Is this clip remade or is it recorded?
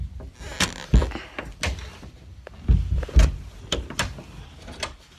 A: recorded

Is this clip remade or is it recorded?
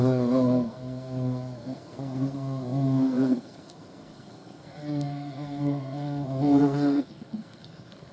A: remade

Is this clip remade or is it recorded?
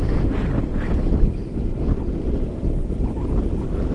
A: recorded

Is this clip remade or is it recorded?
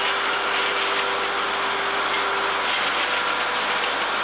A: recorded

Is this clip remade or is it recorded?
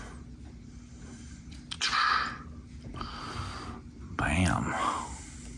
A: recorded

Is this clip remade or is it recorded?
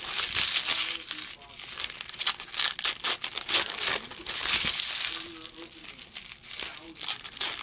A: recorded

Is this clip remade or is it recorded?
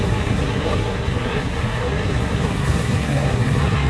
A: remade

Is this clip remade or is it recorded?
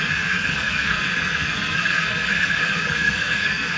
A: remade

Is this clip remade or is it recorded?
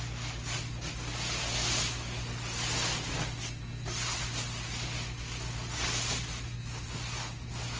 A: recorded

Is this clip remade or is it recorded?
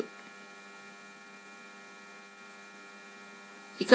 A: recorded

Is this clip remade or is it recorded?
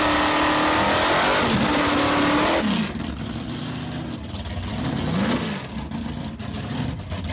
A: recorded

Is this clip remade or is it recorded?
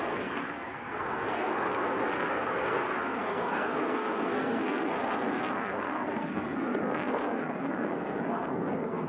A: remade